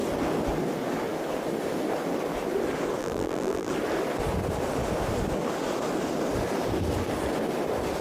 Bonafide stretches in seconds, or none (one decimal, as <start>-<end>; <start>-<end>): 0.0-3.0; 3.7-8.0